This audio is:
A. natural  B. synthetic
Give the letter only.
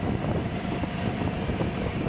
B